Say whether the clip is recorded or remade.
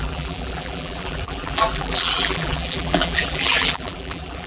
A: remade